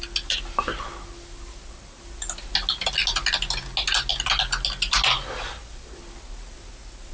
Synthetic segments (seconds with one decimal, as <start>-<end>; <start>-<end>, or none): none